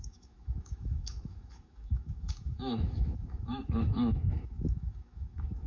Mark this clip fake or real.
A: fake